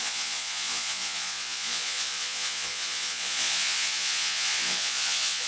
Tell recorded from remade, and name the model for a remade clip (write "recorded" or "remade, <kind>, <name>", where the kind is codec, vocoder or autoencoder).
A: remade, vocoder, Vocos